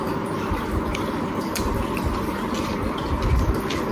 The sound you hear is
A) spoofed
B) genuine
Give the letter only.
B